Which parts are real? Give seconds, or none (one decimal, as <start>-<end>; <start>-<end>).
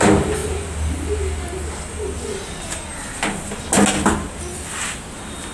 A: 0.0-5.5